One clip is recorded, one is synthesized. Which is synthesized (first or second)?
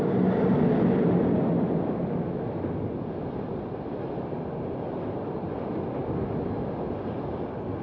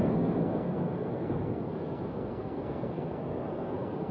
second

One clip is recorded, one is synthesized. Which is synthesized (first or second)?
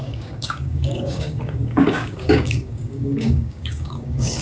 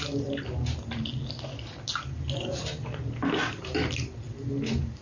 first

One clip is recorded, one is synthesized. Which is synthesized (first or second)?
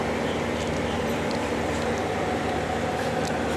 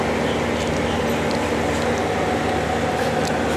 first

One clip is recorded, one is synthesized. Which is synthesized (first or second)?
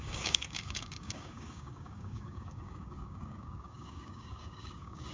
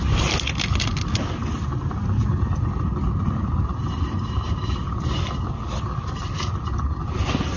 first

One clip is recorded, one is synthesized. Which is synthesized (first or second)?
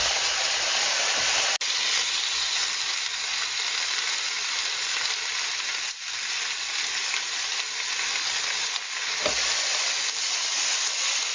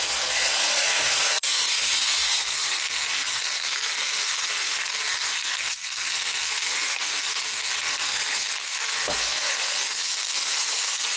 second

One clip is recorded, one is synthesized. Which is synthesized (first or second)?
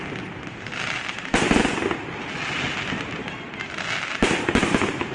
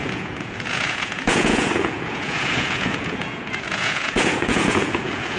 second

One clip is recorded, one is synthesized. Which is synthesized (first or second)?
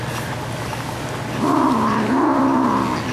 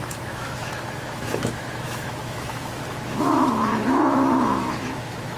second